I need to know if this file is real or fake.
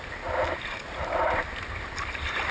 real